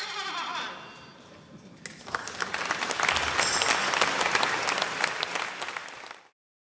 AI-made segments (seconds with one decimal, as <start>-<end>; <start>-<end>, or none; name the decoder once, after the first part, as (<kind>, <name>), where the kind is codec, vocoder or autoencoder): none